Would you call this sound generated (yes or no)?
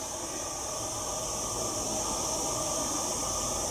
no